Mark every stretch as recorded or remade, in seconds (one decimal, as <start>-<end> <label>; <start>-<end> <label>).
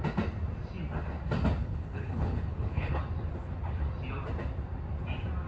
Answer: 0.0-1.6 recorded; 1.6-3.0 remade; 3.0-5.5 recorded